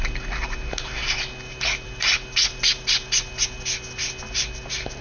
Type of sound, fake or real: real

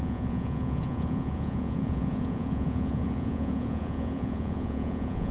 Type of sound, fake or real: fake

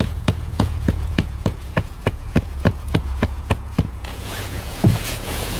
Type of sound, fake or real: fake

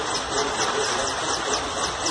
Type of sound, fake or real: real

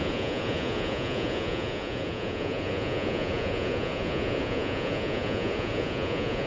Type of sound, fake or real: fake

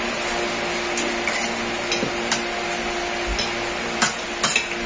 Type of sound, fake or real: real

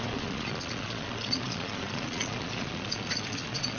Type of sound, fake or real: fake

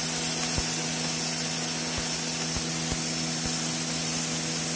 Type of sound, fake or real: real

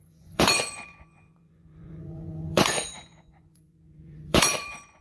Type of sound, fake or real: fake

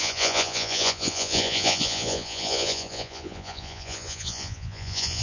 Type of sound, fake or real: fake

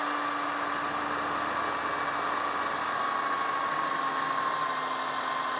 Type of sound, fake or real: real